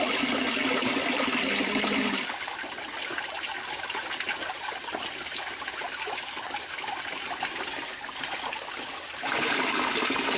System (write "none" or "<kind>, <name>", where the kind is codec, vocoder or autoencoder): none